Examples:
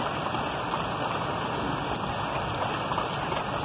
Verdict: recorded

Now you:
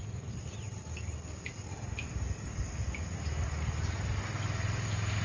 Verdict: recorded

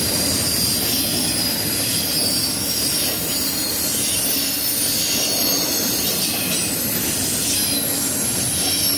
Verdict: recorded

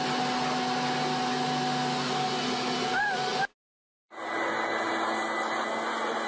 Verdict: recorded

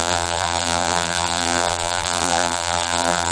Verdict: remade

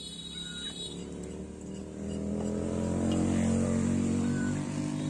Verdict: recorded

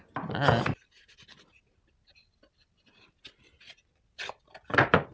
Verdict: recorded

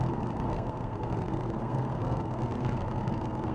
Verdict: remade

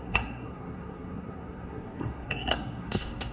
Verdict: remade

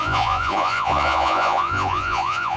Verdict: remade